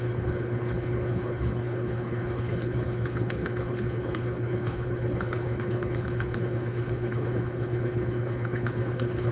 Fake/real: fake